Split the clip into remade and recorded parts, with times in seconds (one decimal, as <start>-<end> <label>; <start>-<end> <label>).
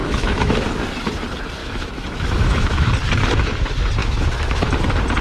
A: 0.0-0.6 remade; 0.6-1.6 recorded; 1.6-2.9 remade; 2.9-4.0 recorded; 4.0-4.7 remade; 4.7-5.2 recorded